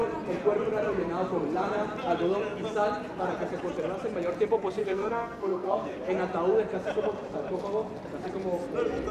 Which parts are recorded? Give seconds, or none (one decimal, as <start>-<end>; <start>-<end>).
0.0-4.8; 6.0-9.1